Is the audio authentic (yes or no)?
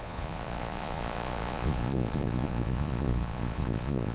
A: no